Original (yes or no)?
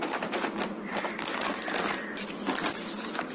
yes